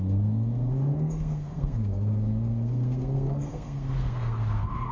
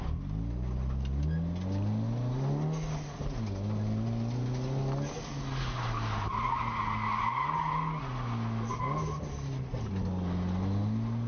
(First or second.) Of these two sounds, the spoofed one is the first